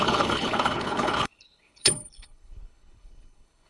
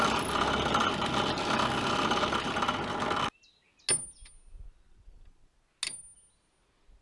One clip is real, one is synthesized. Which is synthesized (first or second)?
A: first